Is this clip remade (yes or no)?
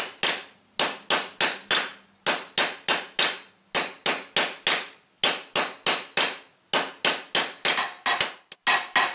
no